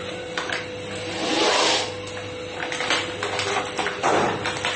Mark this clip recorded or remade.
recorded